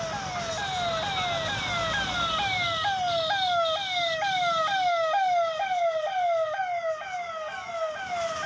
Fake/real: real